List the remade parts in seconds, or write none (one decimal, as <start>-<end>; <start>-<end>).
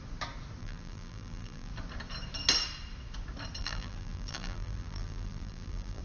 0.6-1.7; 3.6-6.0